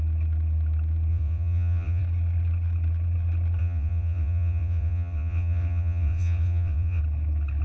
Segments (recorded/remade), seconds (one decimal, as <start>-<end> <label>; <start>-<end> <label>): 0.0-1.1 recorded; 1.1-2.0 remade; 2.0-3.6 recorded; 3.6-7.0 remade; 7.0-7.6 recorded